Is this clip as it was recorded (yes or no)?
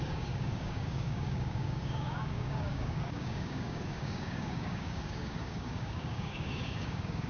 no